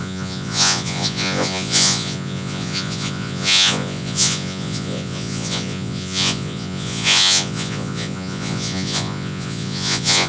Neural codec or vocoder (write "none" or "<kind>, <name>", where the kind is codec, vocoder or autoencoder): vocoder, Vocos